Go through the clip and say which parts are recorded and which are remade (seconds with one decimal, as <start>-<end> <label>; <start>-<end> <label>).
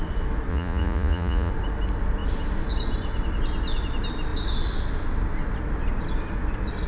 0.0-0.5 recorded; 0.5-1.5 remade; 1.5-6.9 recorded